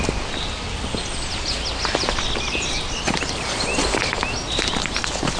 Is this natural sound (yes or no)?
yes